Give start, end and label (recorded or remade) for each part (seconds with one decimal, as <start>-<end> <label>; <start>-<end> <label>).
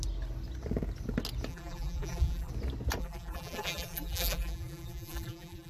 0.0-1.5 recorded; 1.5-2.5 remade; 2.5-3.0 recorded; 3.0-5.7 remade